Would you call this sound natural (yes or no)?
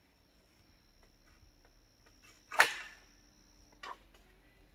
yes